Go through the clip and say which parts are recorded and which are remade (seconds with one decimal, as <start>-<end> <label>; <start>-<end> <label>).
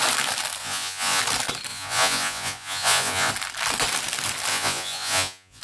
0.0-0.6 recorded; 0.6-1.2 remade; 1.2-1.7 recorded; 1.7-3.3 remade; 3.3-4.5 recorded; 4.5-5.6 remade